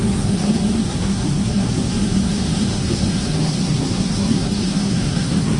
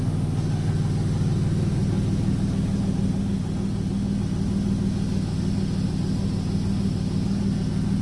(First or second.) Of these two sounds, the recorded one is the second